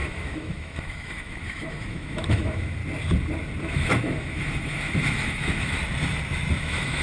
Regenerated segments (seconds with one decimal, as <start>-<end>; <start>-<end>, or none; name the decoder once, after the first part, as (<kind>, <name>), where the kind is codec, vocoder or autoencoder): 0.0-2.8 (autoencoder, DAC-VAE); 3.6-5.8; 6.6-7.0